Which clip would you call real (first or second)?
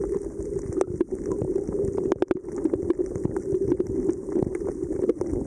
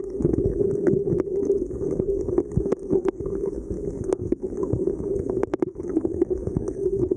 first